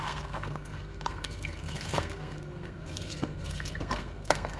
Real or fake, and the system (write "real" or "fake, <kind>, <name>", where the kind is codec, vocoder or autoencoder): fake, codec, SNAC